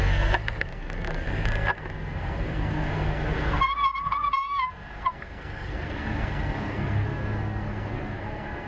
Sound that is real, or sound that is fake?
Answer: fake